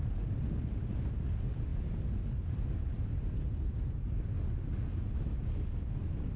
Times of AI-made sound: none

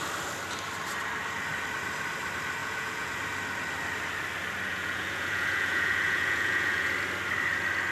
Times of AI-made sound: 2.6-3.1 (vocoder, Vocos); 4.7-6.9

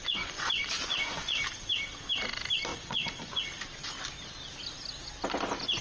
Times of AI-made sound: 0.0-1.4 (vocoder, Vocos); 2.7-3.4

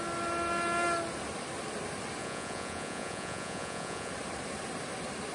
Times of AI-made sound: 2.2-4.1 (vocoder, Vocos)

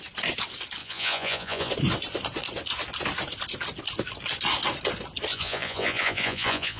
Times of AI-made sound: 0.8-1.7 (vocoder, Vocos); 5.3-6.8